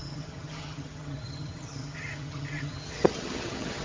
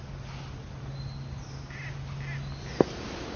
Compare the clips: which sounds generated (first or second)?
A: first